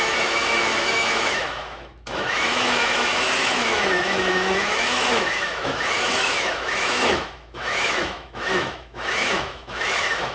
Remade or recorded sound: remade